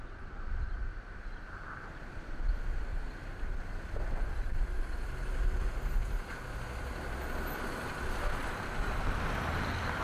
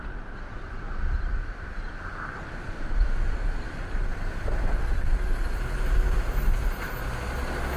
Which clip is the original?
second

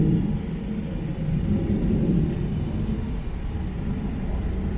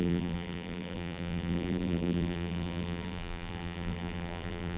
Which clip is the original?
first